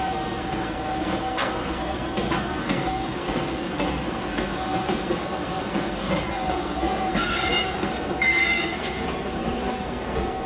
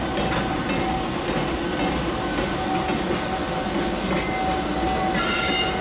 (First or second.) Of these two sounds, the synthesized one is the first